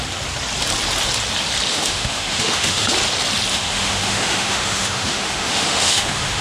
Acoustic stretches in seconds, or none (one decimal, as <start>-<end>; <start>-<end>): 0.0-1.7; 2.9-3.5